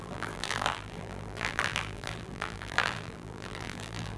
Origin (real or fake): fake